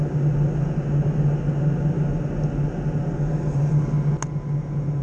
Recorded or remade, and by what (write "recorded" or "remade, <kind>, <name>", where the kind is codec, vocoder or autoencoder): recorded